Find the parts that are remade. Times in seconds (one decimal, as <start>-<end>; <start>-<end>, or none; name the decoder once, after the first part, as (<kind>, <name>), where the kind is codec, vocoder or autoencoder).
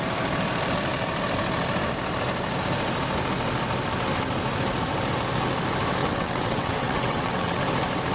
6.0-7.6 (vocoder, WaveNeXt)